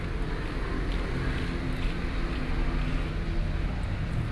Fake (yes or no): no